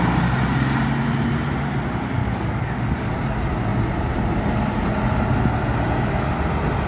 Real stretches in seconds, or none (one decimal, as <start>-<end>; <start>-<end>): 0.0-2.2; 3.1-6.9